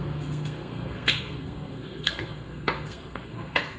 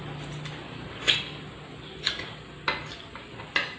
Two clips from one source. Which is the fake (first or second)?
first